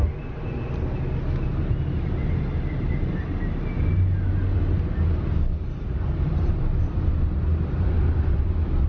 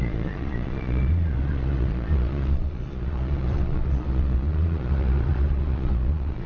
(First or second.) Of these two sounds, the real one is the first